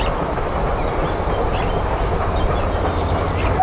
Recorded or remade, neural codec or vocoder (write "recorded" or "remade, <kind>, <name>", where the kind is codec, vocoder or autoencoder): recorded